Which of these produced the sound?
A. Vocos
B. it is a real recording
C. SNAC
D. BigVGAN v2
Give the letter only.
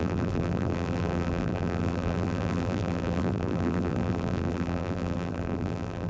D